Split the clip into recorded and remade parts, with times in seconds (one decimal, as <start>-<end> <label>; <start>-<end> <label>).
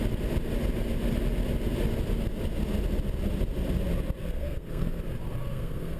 0.0-4.2 recorded; 4.2-5.0 remade; 5.0-5.4 recorded; 5.4-6.0 remade